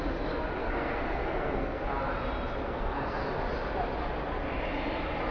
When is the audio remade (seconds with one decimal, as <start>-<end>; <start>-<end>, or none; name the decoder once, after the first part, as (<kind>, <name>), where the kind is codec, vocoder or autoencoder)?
0.6-1.8 (codec, SNAC); 2.6-3.3